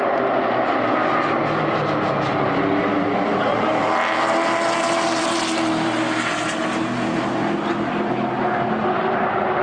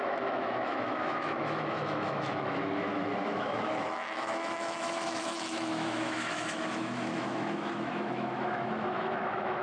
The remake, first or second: second